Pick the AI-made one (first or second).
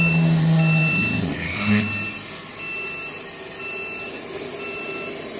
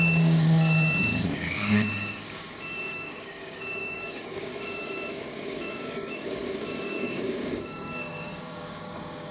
second